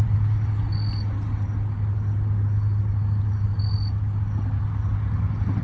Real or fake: real